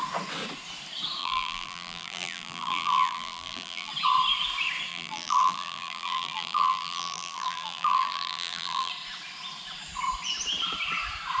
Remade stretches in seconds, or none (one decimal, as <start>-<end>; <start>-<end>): 1.2-3.9; 4.9-8.9